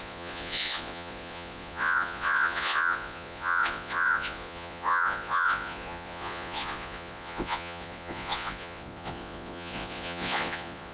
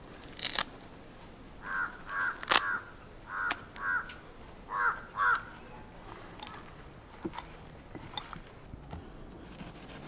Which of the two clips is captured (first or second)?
second